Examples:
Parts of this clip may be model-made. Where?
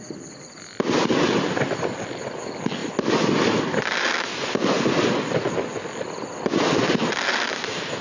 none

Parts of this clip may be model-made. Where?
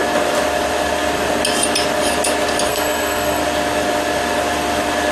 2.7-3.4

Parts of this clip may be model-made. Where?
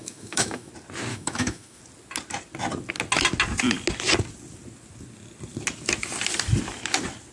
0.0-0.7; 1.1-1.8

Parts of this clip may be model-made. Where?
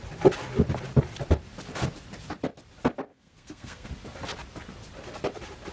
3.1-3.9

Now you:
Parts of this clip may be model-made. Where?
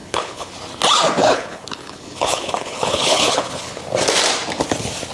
0.0-0.5; 1.2-3.8